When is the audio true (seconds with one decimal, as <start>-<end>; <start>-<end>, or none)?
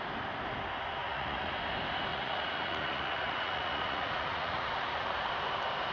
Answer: 0.0-1.0; 1.5-2.1; 5.3-5.9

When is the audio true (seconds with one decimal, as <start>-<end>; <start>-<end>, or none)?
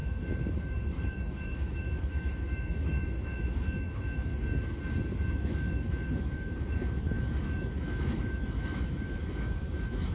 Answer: 4.3-5.3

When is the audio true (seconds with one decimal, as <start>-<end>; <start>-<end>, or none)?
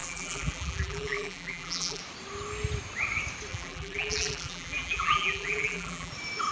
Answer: 2.0-3.5; 6.1-6.5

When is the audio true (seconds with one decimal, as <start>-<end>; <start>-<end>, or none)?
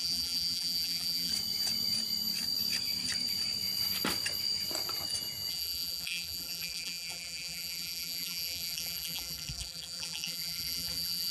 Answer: 1.3-5.5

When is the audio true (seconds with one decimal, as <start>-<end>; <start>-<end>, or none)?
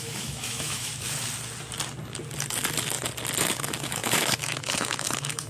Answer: 0.9-3.4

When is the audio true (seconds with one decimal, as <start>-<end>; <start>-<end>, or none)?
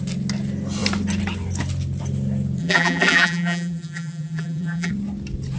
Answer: 0.0-2.6; 4.9-5.6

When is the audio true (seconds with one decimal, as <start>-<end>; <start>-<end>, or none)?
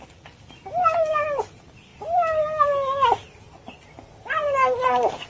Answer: 0.0-5.3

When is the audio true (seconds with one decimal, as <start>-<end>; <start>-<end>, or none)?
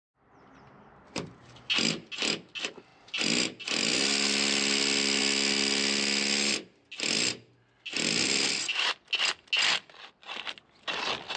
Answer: 0.0-11.4